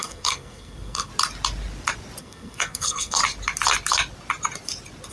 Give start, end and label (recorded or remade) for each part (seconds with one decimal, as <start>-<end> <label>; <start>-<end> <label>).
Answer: 0.0-1.1 remade; 1.1-2.2 recorded; 2.2-3.2 remade; 3.2-5.1 recorded